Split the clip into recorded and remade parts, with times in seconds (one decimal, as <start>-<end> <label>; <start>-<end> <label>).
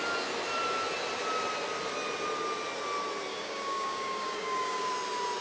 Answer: 0.0-3.3 recorded; 3.3-4.9 remade; 4.9-5.4 recorded